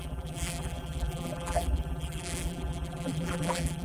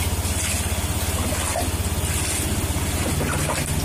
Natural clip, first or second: second